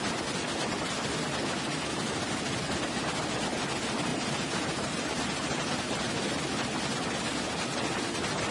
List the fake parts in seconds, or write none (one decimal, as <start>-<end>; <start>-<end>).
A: 4.1-6.1